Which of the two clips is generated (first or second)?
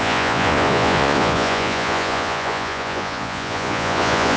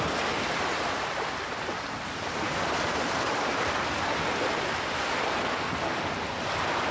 first